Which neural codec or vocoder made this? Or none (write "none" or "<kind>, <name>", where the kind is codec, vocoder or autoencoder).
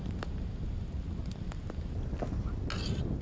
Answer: none